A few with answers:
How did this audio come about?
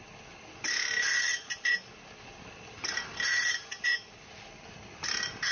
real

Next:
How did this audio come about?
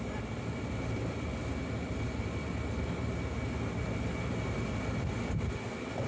real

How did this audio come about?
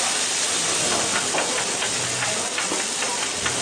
real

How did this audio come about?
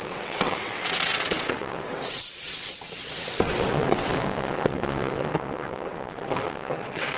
fake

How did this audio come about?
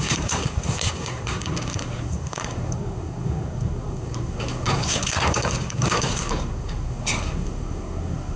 fake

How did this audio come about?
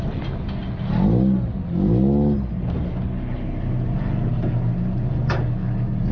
real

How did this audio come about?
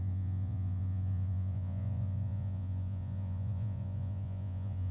fake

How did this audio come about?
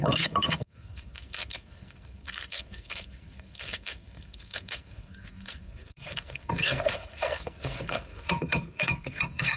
fake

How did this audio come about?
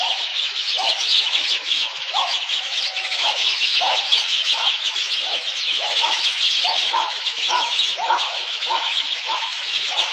fake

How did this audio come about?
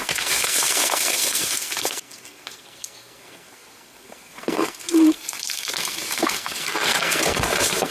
fake